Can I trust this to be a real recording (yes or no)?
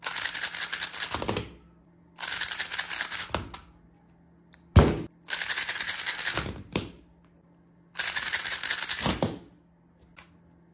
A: yes